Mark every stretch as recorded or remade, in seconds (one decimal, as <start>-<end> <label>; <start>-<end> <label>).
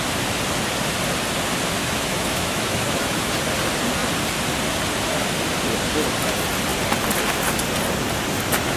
0.0-1.8 recorded; 1.8-3.3 remade; 3.3-8.8 recorded